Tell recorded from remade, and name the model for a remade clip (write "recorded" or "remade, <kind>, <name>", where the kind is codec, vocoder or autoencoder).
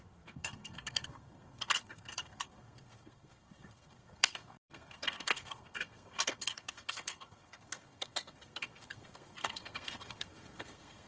remade, codec, SNAC